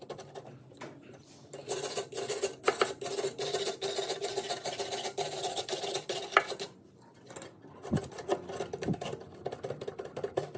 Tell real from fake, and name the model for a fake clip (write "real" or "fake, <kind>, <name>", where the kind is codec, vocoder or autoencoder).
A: real